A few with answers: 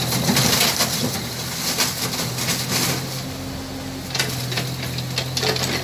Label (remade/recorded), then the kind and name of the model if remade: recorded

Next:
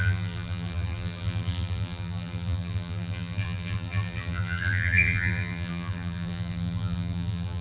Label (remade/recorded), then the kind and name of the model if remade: remade, vocoder, BigVGAN v2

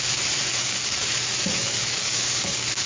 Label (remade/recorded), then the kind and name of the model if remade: remade, codec, DAC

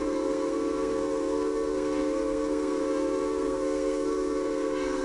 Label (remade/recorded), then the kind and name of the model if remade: remade, codec, SNAC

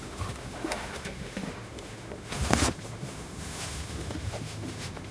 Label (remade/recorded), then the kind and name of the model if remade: remade, autoencoder, DAC-VAE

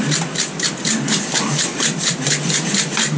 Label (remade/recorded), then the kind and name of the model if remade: recorded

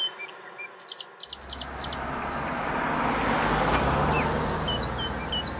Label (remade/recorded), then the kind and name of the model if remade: recorded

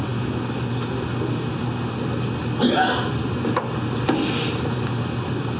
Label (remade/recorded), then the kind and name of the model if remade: recorded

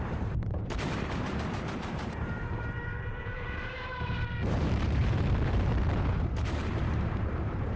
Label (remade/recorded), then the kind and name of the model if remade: remade, vocoder, BigVGAN v2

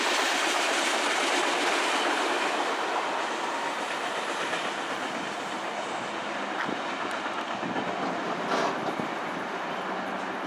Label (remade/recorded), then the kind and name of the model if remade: recorded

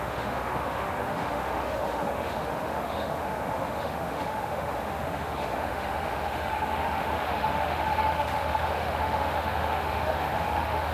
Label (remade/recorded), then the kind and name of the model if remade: remade, autoencoder, DAC-VAE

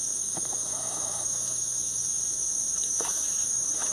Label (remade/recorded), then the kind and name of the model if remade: remade, autoencoder, DAC-VAE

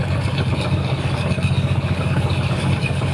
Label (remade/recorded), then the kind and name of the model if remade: remade, codec, DAC